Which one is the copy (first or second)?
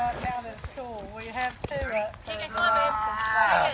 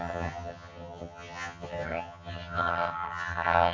second